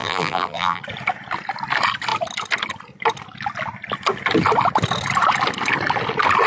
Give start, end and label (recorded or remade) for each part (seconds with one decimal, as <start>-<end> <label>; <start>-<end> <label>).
0.0-0.8 remade; 0.8-6.5 recorded